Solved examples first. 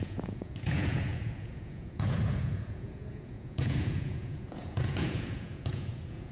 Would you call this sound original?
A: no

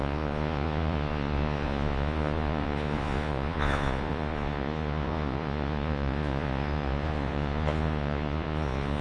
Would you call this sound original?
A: no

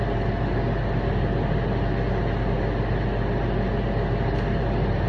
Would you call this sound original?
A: yes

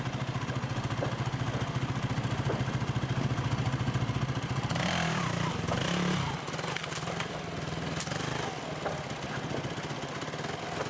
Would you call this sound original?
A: yes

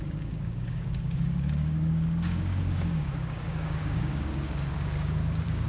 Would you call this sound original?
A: no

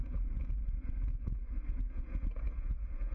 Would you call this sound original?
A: no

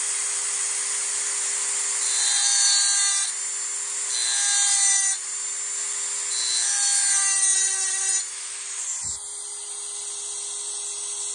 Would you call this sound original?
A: yes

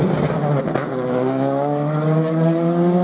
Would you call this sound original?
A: yes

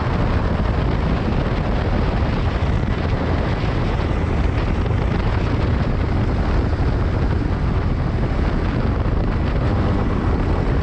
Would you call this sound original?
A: yes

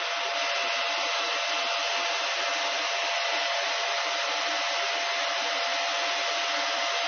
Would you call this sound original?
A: yes